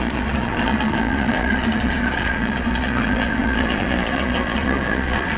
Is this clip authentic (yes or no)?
no